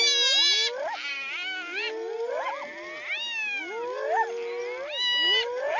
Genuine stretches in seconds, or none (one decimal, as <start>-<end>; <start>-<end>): 0.0-5.8